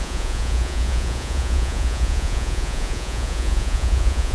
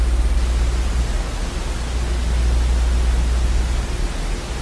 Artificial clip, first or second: first